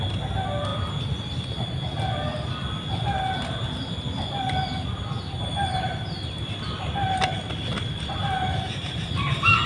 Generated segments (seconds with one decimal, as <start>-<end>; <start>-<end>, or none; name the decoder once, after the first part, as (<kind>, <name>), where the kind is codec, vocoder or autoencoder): none